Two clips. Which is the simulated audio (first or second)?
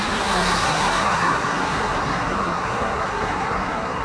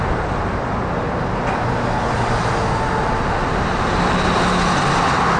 first